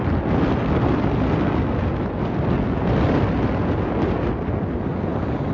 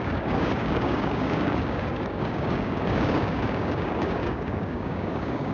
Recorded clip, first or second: first